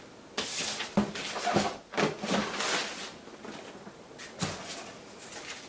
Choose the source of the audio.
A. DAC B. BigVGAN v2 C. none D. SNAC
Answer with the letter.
C